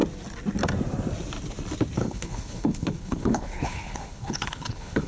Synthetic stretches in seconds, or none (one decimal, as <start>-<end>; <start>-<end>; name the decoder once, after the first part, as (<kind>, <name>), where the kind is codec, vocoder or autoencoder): 2.0-5.1 (codec, HILCodec)